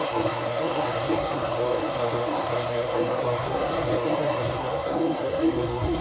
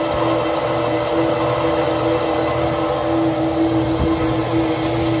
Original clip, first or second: second